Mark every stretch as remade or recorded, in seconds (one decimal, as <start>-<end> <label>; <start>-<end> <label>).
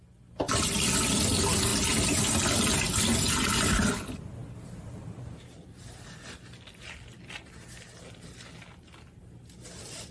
0.0-10.1 recorded